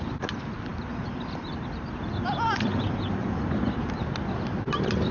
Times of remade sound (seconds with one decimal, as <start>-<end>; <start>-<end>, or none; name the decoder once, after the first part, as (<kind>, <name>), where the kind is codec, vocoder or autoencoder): none